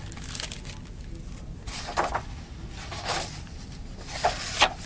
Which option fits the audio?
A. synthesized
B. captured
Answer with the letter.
B